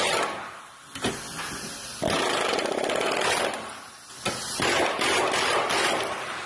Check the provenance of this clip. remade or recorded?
recorded